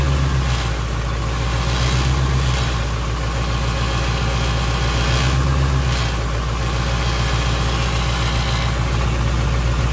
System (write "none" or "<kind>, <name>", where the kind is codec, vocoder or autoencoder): none